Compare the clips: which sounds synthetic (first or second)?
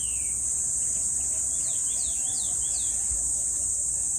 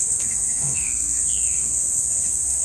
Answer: second